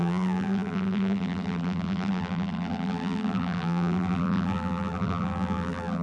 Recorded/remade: remade